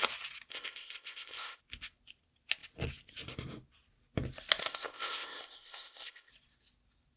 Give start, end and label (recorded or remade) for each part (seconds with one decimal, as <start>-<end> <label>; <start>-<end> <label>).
0.0-0.5 recorded; 0.5-1.6 remade; 1.6-4.6 recorded; 4.6-6.3 remade; 6.3-7.2 recorded